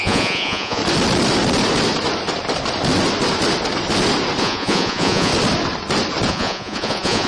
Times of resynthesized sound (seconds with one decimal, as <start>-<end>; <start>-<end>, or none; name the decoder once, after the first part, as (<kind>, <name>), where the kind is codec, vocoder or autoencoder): 0.0-0.8 (vocoder, Vocos); 4.4-5.3; 6.3-7.3